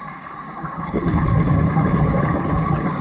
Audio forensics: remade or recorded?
remade